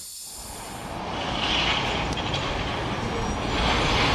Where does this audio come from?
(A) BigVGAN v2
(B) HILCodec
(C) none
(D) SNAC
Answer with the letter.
C